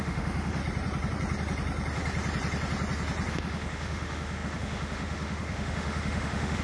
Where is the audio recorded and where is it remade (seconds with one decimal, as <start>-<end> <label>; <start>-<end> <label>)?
0.0-0.6 remade; 0.6-3.3 recorded; 3.3-6.6 remade